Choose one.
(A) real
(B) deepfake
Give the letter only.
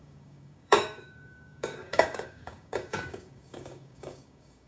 B